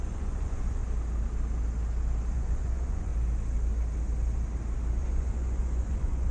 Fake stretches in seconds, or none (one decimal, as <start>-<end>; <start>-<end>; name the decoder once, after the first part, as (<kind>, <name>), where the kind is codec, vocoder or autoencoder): 0.0-0.8 (vocoder, Vocos); 2.3-3.1; 5.0-6.3